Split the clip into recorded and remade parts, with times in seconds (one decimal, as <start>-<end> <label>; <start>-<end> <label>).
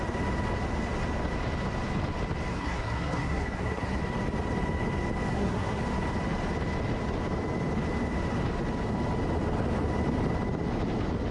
0.0-2.5 recorded; 2.5-4.0 remade; 4.0-5.3 recorded; 5.3-5.8 remade; 5.8-11.3 recorded